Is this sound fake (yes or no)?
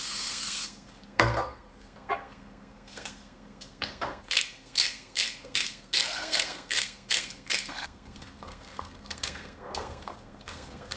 yes